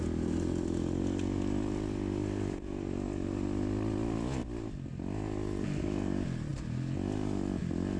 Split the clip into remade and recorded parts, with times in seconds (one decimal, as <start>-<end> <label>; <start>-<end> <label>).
0.0-8.0 recorded